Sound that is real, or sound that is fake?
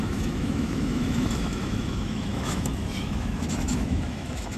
fake